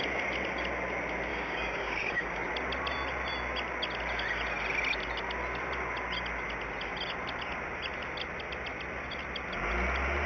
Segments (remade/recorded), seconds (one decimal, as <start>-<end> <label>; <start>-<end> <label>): 0.0-1.3 recorded; 1.3-2.5 remade; 2.5-10.3 recorded